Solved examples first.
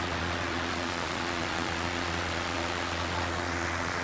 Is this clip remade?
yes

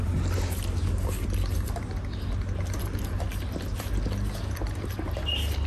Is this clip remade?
no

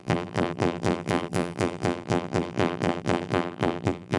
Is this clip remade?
yes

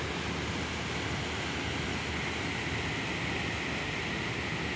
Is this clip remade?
no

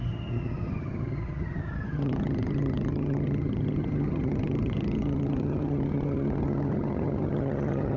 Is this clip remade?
yes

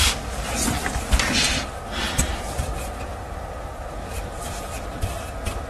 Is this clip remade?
yes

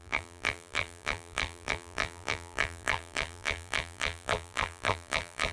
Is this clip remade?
yes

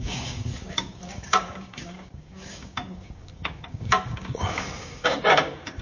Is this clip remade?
yes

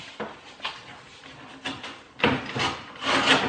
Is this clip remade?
no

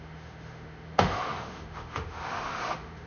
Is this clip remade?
yes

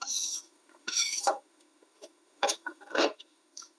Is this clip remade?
yes